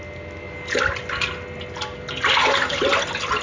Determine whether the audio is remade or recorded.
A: recorded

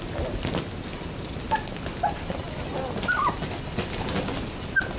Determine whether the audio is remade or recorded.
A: recorded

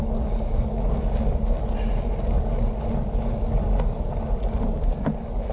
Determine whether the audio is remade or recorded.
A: recorded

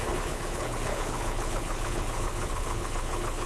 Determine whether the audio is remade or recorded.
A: remade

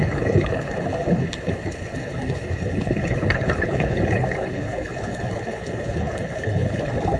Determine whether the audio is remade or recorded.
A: remade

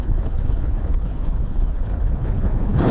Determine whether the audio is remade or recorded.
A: remade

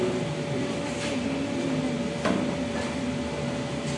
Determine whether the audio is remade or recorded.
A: recorded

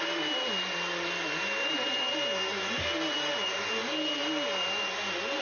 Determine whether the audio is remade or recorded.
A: recorded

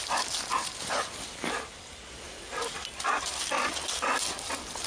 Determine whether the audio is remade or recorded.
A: recorded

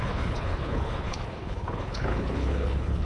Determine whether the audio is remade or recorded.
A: remade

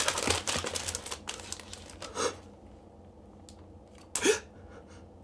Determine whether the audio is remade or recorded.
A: recorded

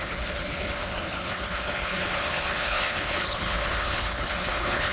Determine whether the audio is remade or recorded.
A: remade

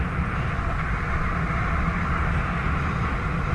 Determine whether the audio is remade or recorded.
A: recorded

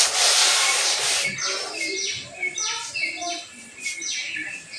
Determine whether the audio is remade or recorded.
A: recorded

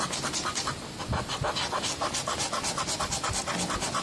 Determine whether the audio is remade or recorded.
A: recorded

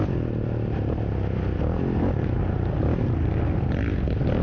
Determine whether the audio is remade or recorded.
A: recorded